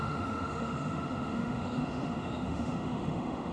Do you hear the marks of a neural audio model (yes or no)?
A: yes